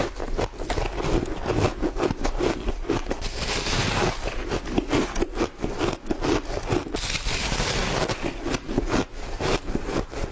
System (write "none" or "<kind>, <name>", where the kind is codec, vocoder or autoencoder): none